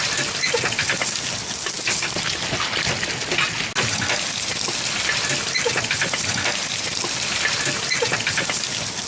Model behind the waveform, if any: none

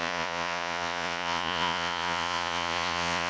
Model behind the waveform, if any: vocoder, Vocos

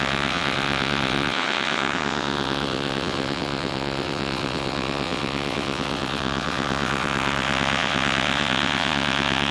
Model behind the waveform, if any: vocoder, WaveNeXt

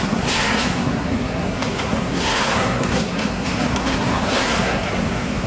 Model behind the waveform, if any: codec, SNAC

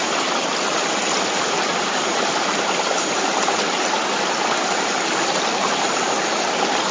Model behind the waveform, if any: none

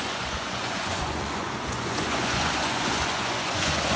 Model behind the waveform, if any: vocoder, Vocos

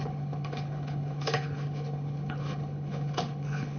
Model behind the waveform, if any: codec, HILCodec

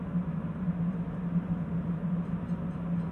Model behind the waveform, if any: none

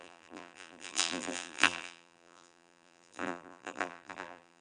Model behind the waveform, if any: vocoder, BigVGAN v2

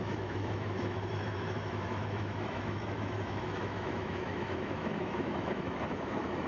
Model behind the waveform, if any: autoencoder, DAC-VAE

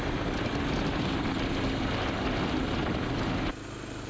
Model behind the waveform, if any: none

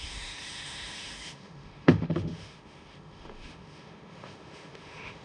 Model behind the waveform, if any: autoencoder, DAC-VAE